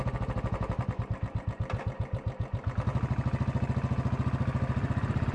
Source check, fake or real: real